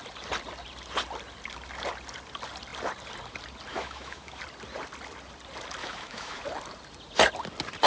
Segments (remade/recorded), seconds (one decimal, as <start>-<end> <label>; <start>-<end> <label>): 0.0-3.7 recorded; 3.7-4.4 remade; 4.4-5.8 recorded; 5.8-6.4 remade; 6.4-7.9 recorded